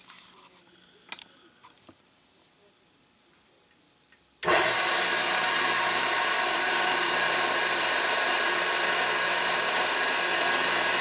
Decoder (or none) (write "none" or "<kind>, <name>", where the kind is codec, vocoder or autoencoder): none